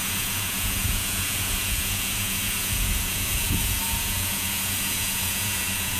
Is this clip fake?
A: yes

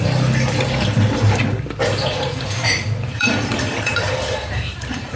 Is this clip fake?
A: yes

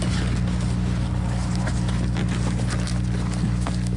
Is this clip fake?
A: no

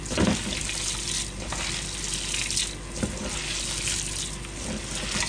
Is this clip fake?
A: no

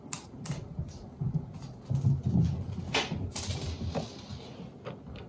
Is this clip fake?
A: no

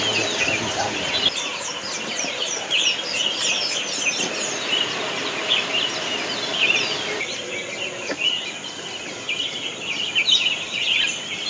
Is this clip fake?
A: no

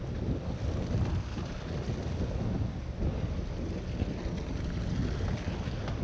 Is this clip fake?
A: no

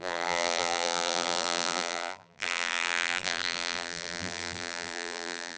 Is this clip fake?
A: yes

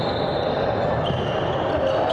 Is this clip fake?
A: no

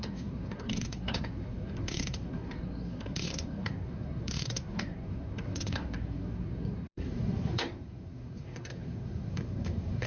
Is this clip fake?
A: yes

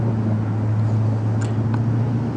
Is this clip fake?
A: no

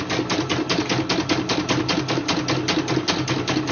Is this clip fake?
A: no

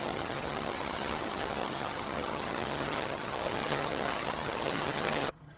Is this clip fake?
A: yes